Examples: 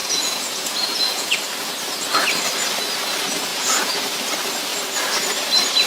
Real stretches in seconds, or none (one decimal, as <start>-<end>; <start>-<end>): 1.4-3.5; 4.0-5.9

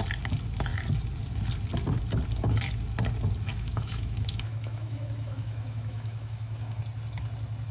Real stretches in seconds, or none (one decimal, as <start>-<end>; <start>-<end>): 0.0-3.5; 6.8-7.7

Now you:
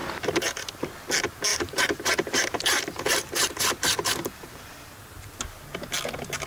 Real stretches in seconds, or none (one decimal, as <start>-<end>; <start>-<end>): 0.9-1.5; 5.4-6.5

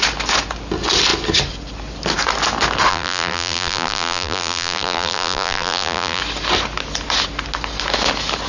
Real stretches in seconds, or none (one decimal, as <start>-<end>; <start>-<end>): 0.0-2.9; 6.2-8.5